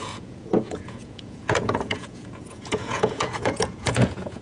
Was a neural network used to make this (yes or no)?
yes